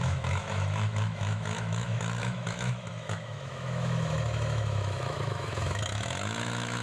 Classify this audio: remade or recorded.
remade